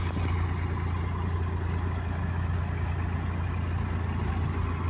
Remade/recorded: recorded